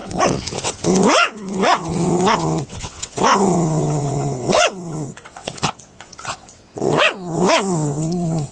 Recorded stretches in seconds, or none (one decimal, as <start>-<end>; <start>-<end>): none